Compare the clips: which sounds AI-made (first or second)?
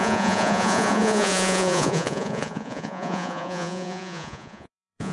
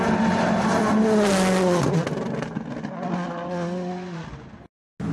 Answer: first